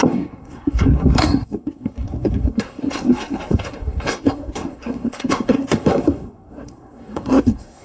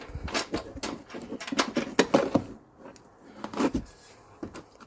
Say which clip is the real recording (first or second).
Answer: second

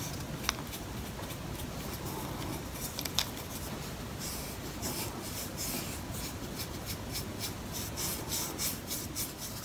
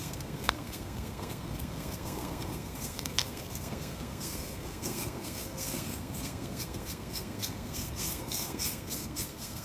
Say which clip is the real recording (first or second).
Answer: first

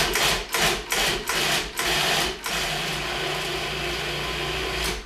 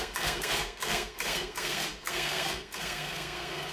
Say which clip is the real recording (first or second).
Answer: first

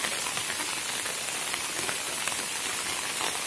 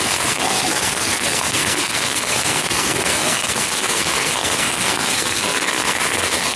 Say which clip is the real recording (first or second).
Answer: first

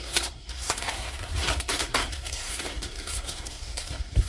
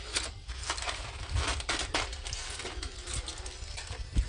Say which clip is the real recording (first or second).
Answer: second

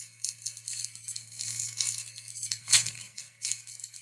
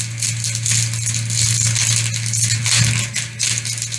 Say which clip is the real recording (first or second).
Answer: second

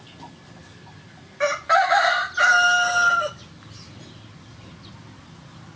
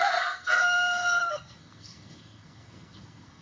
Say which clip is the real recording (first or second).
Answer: first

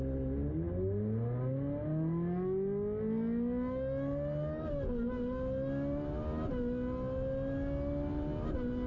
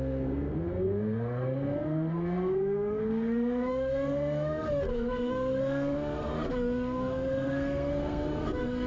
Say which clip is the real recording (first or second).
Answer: first